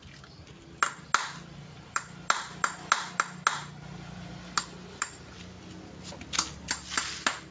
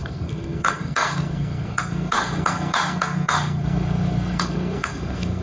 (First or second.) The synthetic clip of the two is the second